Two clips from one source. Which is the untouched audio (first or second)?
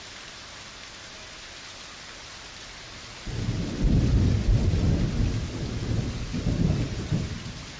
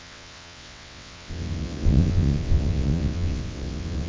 first